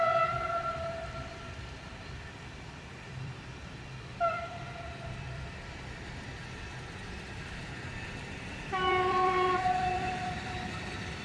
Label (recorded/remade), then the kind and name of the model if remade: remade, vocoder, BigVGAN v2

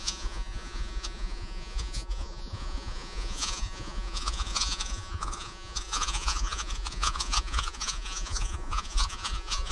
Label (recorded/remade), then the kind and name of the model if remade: remade, vocoder, Vocos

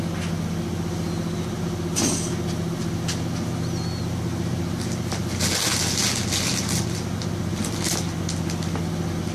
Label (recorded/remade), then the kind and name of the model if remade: recorded